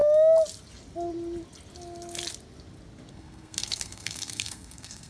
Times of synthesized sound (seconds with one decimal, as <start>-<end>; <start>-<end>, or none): 3.1-5.1